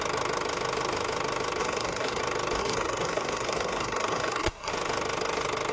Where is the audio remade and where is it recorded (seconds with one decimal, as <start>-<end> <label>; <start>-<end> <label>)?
0.0-1.6 recorded; 1.6-2.2 remade; 2.2-2.6 recorded; 2.6-4.7 remade; 4.7-5.7 recorded